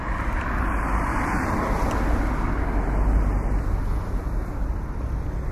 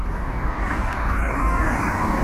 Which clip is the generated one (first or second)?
second